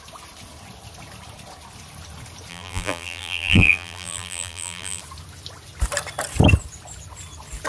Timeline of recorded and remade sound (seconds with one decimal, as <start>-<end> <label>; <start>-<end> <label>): 0.0-2.5 recorded; 2.5-5.0 remade; 5.0-7.7 recorded